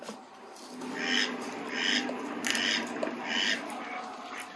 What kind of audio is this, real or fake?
real